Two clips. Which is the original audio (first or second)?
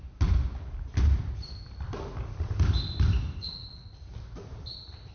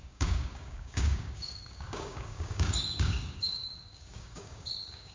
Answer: first